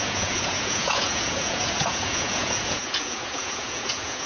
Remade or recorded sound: remade